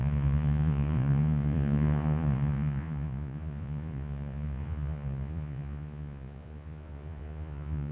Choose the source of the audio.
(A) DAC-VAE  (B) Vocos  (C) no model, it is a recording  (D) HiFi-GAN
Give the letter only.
B